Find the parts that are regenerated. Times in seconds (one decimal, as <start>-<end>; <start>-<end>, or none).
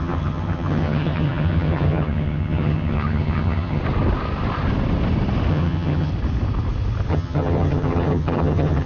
0.0-3.8; 5.5-6.1; 7.1-8.9